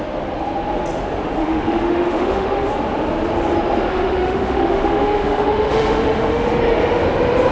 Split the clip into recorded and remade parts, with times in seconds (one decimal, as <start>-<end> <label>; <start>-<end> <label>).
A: 0.0-1.4 recorded; 1.4-2.7 remade; 2.7-3.9 recorded; 3.9-6.6 remade; 6.6-7.5 recorded